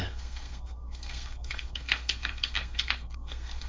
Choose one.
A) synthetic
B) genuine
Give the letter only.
A